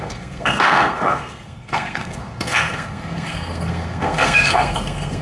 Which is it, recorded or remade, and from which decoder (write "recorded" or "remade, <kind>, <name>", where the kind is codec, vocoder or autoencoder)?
remade, codec, SNAC